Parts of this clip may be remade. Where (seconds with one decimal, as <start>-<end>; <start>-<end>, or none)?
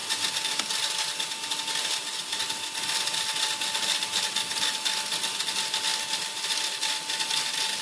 none